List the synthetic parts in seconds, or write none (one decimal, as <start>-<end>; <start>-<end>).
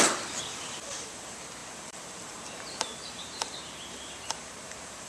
1.6-5.1